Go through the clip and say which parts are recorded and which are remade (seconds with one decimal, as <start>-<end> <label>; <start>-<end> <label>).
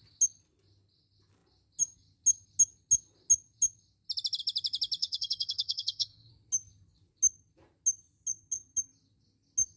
0.0-5.0 recorded; 5.0-6.3 remade; 6.3-9.8 recorded